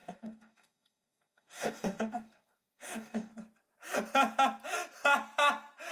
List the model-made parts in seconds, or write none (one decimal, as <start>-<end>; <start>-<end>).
0.0-3.3